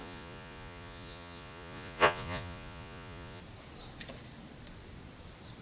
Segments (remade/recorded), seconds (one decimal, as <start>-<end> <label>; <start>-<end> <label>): 0.0-3.4 remade; 3.4-5.6 recorded